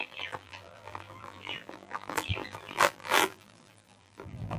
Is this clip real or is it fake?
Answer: fake